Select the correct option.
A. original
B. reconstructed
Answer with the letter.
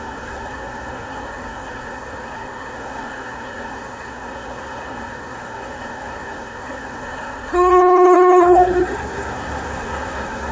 B